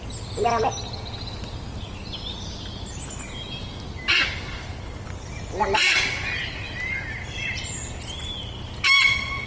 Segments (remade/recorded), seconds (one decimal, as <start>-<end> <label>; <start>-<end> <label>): 0.0-9.5 recorded